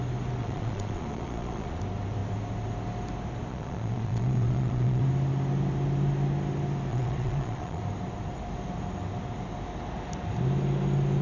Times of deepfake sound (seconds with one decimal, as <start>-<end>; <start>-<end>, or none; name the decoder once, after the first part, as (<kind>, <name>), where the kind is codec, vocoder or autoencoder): 0.4-1.8 (vocoder, Vocos); 3.5-5.0; 6.9-7.8

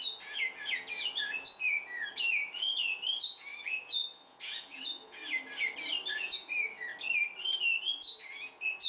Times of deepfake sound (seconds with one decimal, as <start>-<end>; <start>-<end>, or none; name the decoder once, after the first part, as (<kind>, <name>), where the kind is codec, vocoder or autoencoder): 0.0-5.2 (vocoder, Vocos); 6.1-6.9; 7.8-8.9